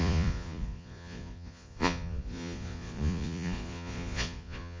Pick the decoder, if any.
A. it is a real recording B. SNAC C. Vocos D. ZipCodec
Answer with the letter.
C